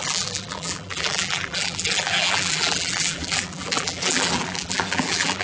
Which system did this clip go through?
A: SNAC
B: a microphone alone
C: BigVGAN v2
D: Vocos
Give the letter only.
C